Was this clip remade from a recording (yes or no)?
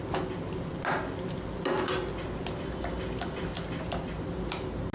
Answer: no